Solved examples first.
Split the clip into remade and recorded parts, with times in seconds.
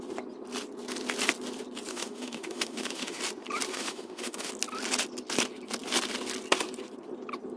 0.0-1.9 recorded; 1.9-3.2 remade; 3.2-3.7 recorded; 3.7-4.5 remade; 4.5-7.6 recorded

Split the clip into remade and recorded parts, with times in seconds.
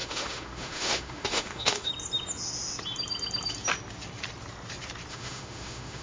0.0-1.9 remade; 1.9-5.1 recorded; 5.1-6.0 remade